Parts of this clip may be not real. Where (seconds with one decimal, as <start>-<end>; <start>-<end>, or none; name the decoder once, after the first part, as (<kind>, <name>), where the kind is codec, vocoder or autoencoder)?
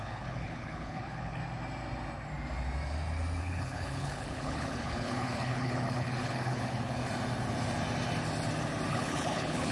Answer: 0.0-1.4 (codec, HILCodec); 3.4-7.0; 8.9-9.7